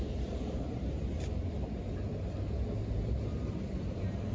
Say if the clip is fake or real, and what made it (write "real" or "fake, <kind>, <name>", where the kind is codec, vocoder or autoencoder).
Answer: real